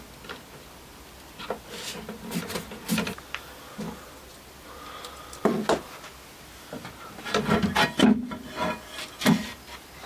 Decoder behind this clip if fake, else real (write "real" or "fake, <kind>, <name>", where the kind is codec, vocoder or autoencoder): real